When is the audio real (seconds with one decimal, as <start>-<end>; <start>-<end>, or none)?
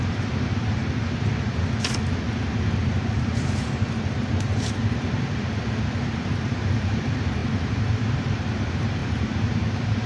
0.8-3.2